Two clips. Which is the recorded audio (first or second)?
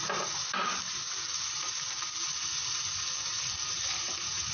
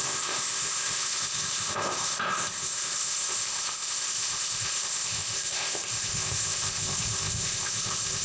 first